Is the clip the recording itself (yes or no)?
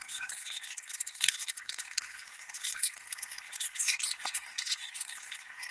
no